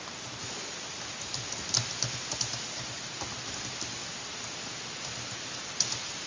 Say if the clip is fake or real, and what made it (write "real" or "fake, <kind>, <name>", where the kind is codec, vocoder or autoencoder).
real